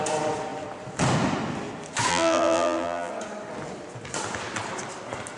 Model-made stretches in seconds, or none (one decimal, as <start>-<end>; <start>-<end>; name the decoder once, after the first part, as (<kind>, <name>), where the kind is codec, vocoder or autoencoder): 2.1-3.1 (vocoder, BigVGAN v2)